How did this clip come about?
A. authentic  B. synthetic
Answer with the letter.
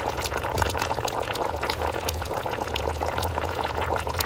B